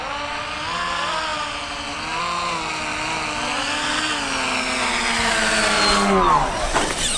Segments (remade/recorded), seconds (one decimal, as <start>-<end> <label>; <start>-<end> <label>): 0.0-7.2 recorded